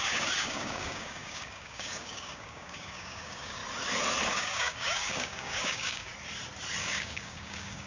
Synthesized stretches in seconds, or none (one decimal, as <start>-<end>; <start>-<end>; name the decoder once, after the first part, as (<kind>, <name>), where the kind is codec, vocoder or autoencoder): 0.0-3.6 (codec, DAC); 4.3-6.1; 6.8-7.9